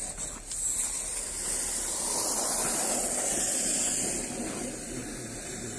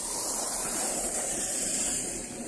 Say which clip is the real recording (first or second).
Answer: first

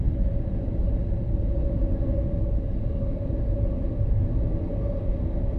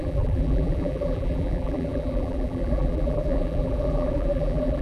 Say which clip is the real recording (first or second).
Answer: first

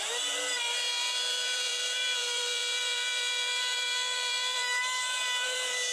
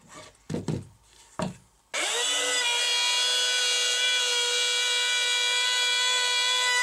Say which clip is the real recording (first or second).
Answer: second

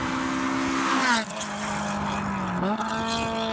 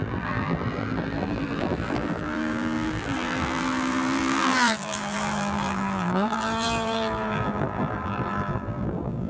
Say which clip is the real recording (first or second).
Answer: first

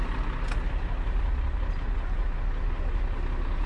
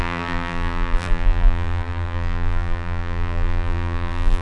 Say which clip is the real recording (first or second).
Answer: first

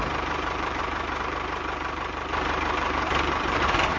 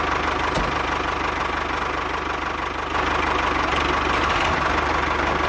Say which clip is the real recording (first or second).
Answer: second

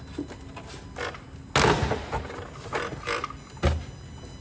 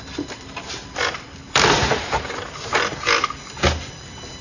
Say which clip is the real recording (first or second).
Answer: first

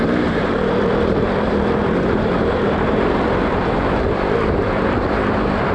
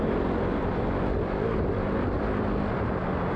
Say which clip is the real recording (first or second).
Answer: second